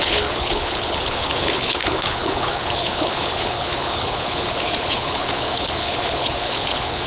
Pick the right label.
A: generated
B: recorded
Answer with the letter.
A